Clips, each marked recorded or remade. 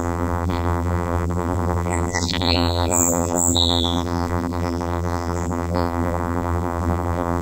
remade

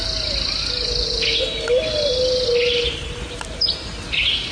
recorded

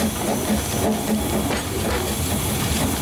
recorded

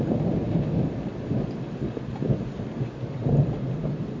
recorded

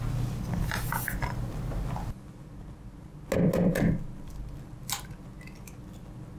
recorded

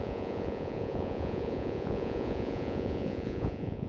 remade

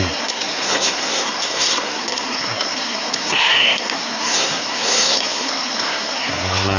remade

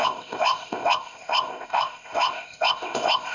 remade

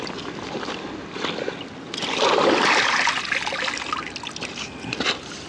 recorded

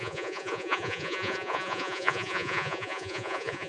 remade